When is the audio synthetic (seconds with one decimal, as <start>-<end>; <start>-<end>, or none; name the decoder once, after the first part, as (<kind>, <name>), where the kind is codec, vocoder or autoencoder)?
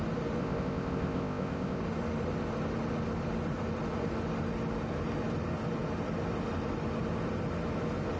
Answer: 0.4-1.8 (codec, ZipCodec)